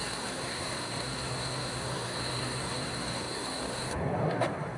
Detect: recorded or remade remade